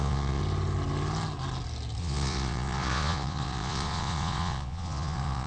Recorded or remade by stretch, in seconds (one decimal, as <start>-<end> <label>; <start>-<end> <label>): 0.0-0.4 remade; 0.4-2.0 recorded; 2.0-5.5 remade